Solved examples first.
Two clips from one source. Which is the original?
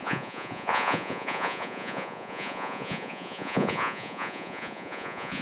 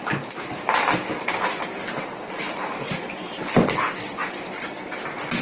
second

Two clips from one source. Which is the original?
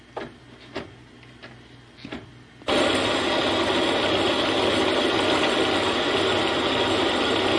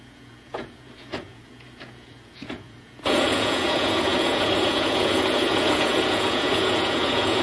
first